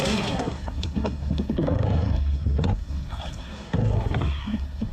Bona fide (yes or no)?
no